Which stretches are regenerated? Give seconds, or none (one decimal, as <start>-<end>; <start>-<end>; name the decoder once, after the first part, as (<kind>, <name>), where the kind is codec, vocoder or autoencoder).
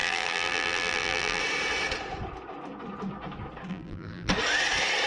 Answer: 0.0-1.4 (vocoder, BigVGAN v2); 3.7-4.3